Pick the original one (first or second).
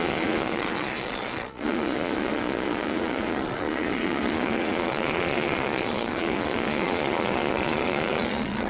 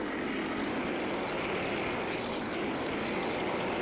second